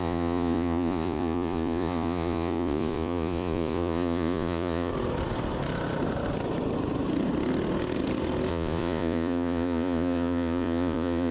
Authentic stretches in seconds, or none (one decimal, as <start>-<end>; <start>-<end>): 4.9-8.5